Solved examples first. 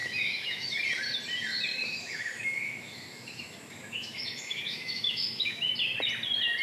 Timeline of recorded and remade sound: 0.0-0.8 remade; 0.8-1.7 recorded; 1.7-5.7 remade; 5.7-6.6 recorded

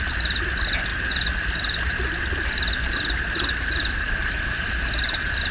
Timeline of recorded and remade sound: 0.0-5.5 recorded

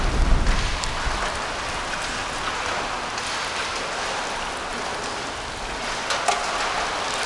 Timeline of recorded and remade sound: 0.0-7.3 recorded

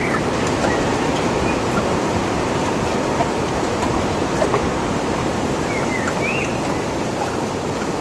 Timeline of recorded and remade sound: 0.0-4.5 remade; 4.5-5.3 recorded; 5.3-6.5 remade; 6.5-7.1 recorded; 7.1-8.0 remade

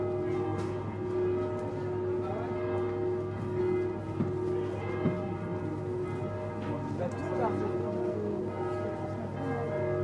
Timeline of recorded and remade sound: 0.0-7.8 recorded; 7.8-8.4 remade; 8.4-10.0 recorded

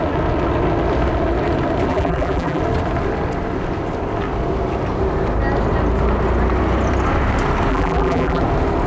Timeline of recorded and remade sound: 0.0-1.9 recorded; 1.9-2.6 remade; 2.6-7.7 recorded; 7.7-8.4 remade; 8.4-8.9 recorded